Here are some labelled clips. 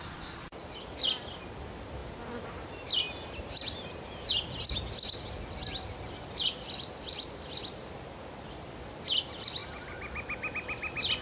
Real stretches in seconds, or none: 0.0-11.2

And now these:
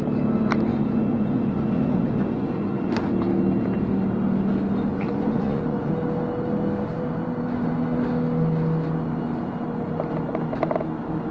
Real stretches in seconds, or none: 0.0-0.7; 3.1-4.9; 5.9-11.3

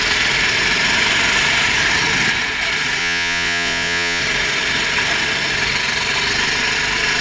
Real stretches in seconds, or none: 0.0-3.0; 4.2-7.2

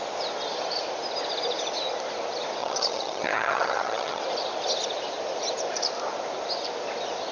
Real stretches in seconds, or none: 0.0-2.6; 4.2-7.3

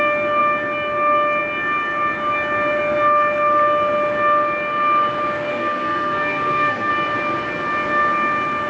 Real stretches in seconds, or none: 0.0-5.5; 6.9-8.7